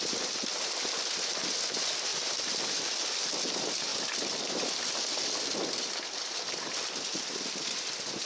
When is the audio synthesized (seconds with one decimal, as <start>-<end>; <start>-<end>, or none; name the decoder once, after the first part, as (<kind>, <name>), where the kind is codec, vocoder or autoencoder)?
2.1-2.7 (vocoder, BigVGAN v2)